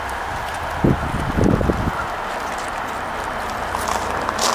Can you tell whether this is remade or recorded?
recorded